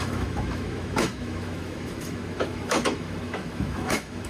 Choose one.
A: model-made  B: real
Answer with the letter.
A